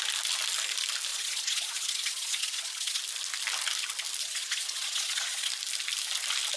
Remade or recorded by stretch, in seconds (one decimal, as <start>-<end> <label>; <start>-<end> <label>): 0.0-1.1 recorded; 1.1-3.0 remade; 3.0-4.2 recorded; 4.2-5.5 remade; 5.5-6.6 recorded